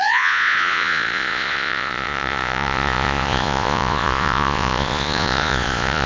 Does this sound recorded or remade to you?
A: remade